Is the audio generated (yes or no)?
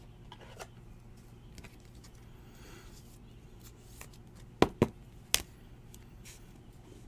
no